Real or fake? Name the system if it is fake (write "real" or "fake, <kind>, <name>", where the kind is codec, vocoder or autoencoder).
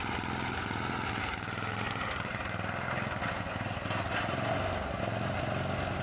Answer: real